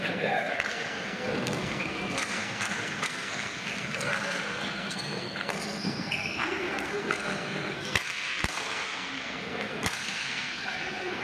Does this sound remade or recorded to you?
remade